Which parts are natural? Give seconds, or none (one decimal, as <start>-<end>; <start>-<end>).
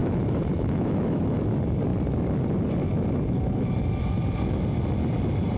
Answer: 1.4-5.6